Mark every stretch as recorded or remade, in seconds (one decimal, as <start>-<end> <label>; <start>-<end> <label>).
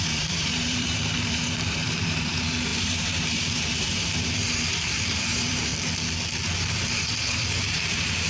0.0-5.7 remade; 5.7-6.7 recorded; 6.7-8.3 remade